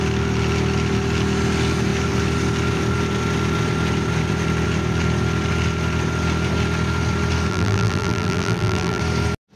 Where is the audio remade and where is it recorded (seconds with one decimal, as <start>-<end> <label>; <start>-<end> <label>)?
0.0-7.5 recorded; 7.5-9.0 remade; 9.0-9.6 recorded